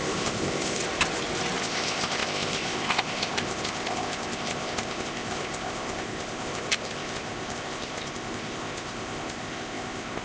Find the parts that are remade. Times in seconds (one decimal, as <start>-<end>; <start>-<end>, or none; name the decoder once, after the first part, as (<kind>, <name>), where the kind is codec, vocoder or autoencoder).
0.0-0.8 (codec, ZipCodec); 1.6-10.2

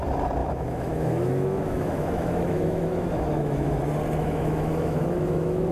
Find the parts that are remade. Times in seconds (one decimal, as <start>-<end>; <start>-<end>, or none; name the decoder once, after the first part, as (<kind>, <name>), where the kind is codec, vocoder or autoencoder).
0.4-3.8 (autoencoder, DAC-VAE); 4.2-5.7

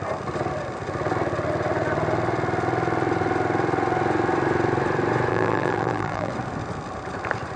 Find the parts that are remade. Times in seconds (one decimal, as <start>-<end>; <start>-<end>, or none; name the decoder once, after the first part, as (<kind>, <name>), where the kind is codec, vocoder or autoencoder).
5.3-6.3 (vocoder, BigVGAN v2)

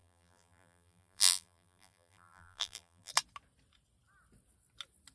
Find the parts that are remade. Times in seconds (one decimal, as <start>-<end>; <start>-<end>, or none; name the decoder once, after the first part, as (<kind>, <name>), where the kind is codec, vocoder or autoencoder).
0.0-3.1 (vocoder, BigVGAN v2)

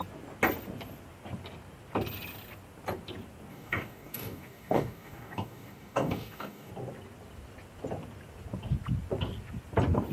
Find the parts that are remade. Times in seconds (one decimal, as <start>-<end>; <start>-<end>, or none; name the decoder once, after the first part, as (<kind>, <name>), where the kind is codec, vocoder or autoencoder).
3.5-6.7 (codec, DAC)

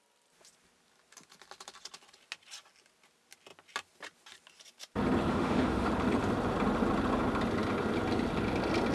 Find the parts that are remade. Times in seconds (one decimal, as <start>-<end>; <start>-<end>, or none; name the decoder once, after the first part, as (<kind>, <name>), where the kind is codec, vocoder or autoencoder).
5.3-5.9 (autoencoder, DAC-VAE)

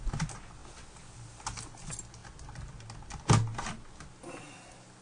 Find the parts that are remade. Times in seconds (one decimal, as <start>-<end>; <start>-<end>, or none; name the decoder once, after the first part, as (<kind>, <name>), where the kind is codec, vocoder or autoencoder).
none